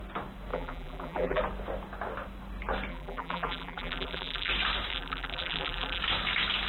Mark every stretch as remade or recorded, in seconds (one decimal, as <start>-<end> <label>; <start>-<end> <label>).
0.0-0.5 recorded; 0.5-1.4 remade; 1.4-2.9 recorded; 2.9-4.5 remade; 4.5-4.9 recorded; 4.9-6.0 remade; 6.0-6.7 recorded